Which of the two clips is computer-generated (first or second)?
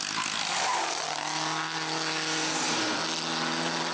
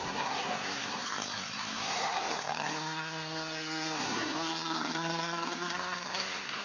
second